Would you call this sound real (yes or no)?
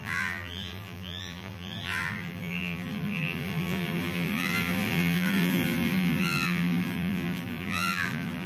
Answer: no